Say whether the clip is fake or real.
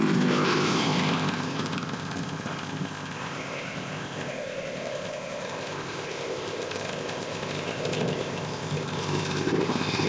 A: fake